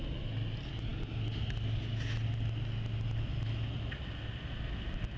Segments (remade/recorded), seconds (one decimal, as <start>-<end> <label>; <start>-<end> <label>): 0.0-5.2 recorded